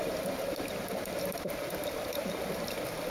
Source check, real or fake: fake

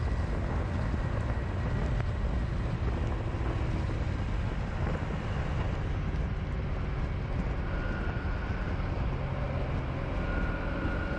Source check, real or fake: real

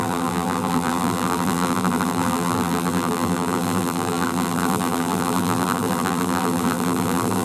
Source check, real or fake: fake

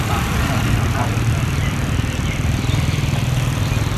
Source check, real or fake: fake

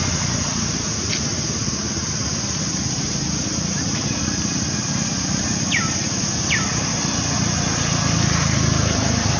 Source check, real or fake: real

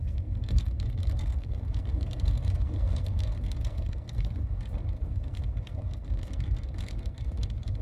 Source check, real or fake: fake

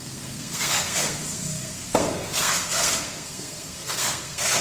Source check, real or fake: fake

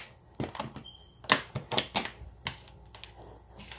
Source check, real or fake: real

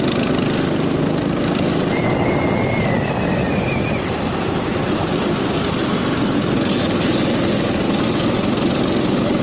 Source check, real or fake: real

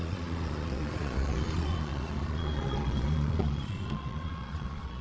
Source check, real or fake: fake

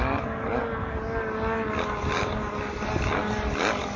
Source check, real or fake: real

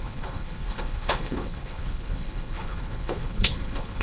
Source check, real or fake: fake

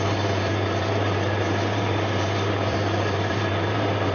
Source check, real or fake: fake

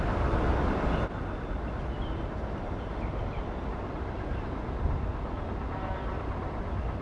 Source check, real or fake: real